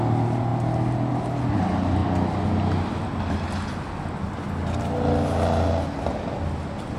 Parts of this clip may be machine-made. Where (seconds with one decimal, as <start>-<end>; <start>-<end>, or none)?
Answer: none